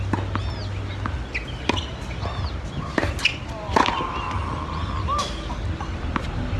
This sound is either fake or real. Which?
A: real